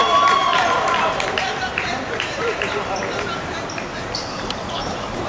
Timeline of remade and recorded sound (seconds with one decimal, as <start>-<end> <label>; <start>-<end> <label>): 0.0-5.3 remade